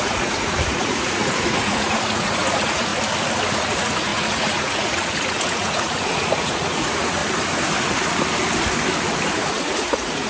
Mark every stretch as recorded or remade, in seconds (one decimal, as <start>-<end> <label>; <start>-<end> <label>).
0.0-2.9 remade; 2.9-3.5 recorded; 3.5-7.2 remade; 7.2-9.5 recorded; 9.5-10.3 remade